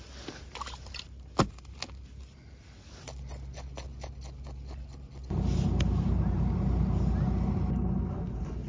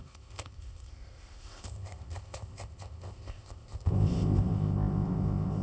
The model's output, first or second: second